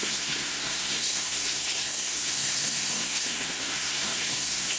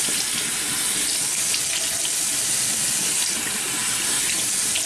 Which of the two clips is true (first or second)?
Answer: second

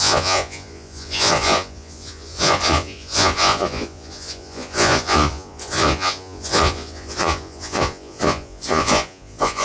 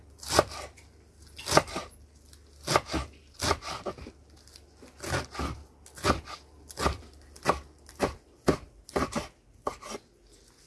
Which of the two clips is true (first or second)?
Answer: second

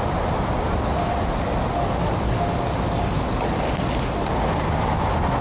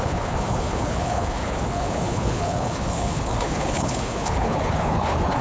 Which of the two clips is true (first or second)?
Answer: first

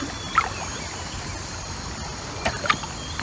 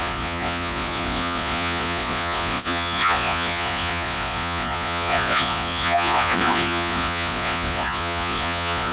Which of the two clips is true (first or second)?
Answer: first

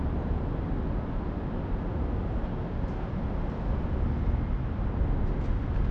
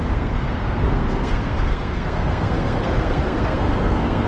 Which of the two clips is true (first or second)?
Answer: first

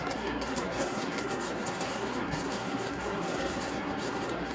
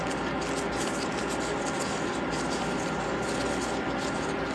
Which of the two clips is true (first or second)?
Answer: second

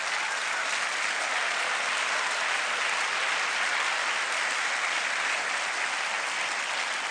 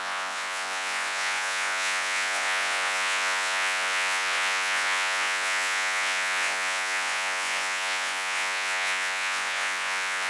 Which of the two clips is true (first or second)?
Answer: first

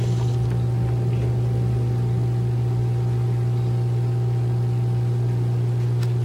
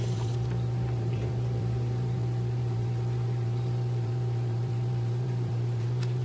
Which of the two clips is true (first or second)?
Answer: first